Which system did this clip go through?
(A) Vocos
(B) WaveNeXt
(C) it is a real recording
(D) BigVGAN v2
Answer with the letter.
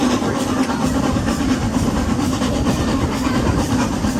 D